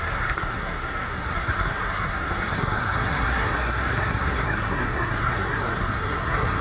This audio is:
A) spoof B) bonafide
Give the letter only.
A